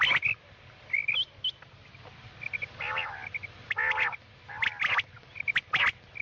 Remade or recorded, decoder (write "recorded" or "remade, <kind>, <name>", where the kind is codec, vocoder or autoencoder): recorded